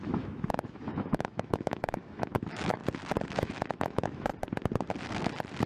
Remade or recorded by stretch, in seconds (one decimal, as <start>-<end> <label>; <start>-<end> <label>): 0.0-2.8 remade; 2.8-3.3 recorded; 3.3-4.3 remade; 4.3-5.7 recorded